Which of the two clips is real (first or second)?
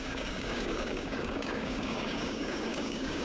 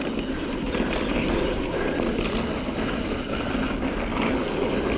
second